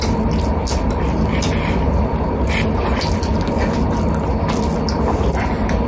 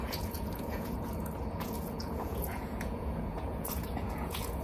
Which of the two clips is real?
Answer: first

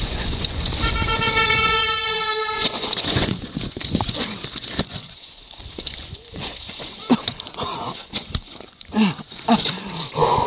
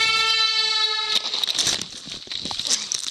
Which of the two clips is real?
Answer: second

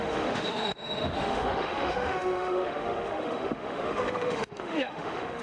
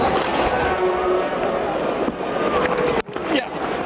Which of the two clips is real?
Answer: second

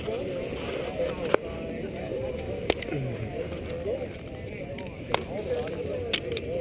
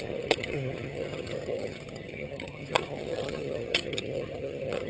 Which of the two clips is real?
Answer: first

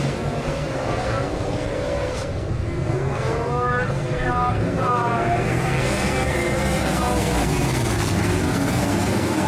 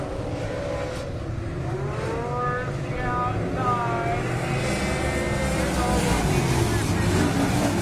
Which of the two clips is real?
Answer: second